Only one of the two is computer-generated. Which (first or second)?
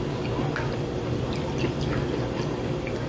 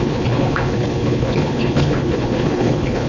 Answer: second